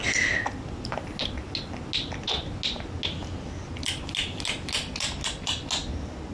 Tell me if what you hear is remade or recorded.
recorded